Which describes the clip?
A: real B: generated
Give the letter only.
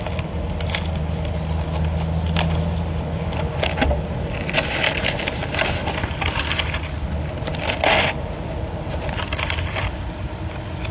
A